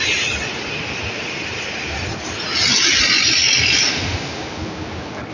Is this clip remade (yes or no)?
no